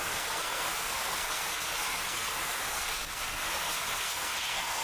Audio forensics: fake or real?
fake